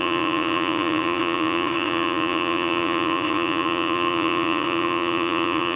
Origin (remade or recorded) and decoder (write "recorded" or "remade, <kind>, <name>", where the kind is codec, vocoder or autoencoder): remade, vocoder, Vocos